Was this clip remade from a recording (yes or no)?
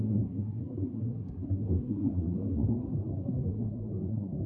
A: yes